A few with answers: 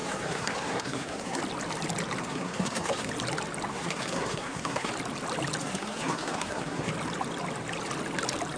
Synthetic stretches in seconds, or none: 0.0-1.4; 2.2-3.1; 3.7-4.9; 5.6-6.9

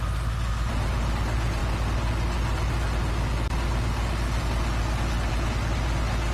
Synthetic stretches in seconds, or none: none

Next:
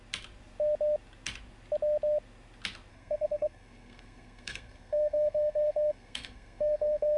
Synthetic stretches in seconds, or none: 2.9-7.2

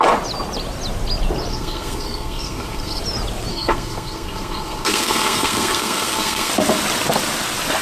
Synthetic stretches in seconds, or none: 1.5-3.0; 3.5-6.5

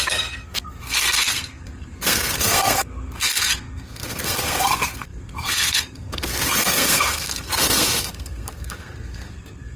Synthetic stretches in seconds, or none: 0.0-9.8

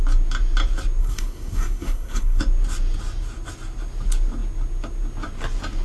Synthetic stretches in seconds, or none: 1.0-2.4